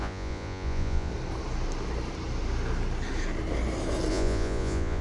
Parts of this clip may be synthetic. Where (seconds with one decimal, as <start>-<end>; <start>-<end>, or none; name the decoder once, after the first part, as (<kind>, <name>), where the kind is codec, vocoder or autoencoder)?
0.0-1.1 (vocoder, Vocos); 4.1-5.0